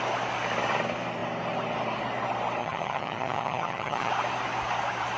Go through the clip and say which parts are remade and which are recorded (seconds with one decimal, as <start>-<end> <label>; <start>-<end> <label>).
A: 0.0-2.6 recorded; 2.6-4.1 remade; 4.1-5.2 recorded